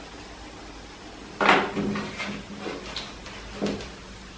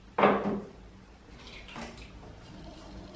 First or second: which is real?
first